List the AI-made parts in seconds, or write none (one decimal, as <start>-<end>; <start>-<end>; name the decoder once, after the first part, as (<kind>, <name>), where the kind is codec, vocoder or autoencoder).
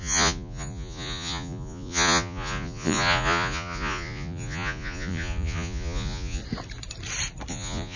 0.0-6.4 (vocoder, Vocos); 7.5-8.0